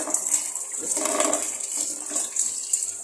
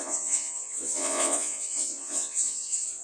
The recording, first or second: first